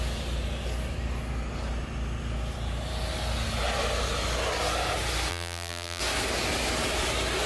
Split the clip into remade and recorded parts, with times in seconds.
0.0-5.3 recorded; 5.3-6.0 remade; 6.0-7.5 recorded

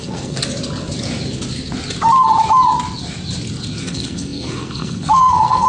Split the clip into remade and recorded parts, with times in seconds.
0.0-0.4 remade; 0.4-3.8 recorded; 3.8-5.7 remade